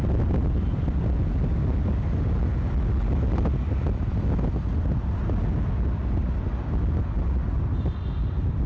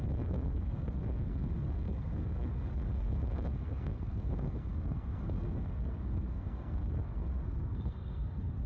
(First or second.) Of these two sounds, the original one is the first